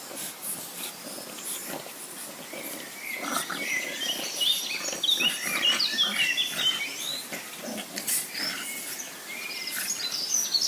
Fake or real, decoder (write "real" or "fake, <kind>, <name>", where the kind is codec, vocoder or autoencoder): real